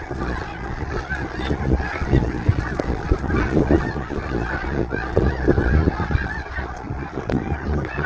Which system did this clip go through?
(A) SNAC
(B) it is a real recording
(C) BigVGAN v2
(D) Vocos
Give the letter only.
D